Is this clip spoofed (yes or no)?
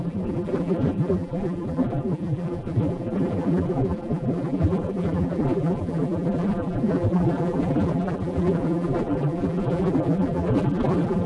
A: yes